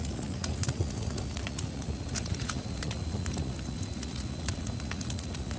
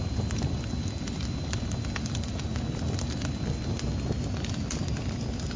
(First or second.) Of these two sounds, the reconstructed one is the first